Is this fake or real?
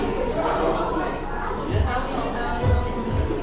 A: real